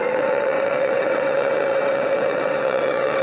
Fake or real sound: fake